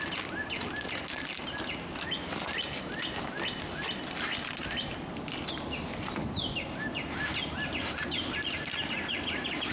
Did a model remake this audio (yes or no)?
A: no